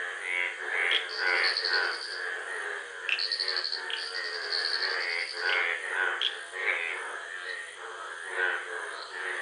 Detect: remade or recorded recorded